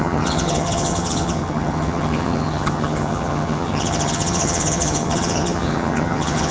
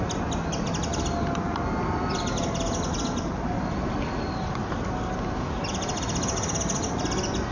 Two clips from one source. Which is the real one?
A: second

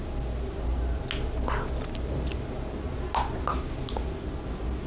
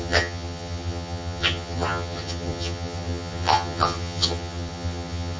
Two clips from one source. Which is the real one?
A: first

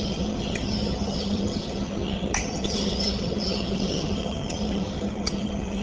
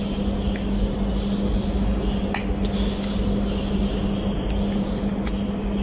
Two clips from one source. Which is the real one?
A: second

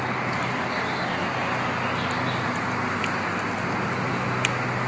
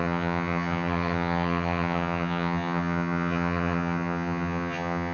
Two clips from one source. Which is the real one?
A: first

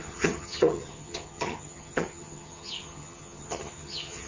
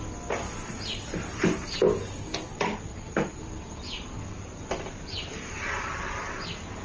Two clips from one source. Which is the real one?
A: second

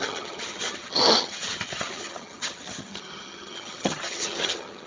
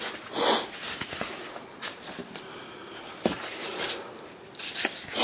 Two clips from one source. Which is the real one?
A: second